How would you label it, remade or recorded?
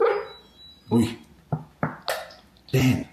recorded